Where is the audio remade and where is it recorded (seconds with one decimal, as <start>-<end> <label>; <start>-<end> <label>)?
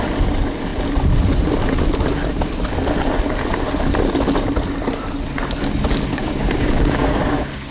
0.0-6.1 recorded; 6.1-7.7 remade